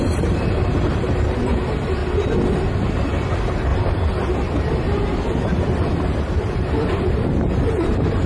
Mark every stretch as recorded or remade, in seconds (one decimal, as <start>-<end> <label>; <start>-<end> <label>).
0.0-2.0 remade; 2.0-2.9 recorded; 2.9-3.7 remade; 3.7-6.2 recorded; 6.2-8.3 remade